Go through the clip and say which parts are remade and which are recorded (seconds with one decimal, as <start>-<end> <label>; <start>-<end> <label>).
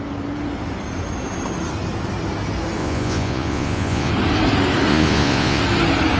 0.0-2.8 recorded; 2.8-4.1 remade; 4.1-4.9 recorded; 4.9-5.6 remade; 5.6-6.2 recorded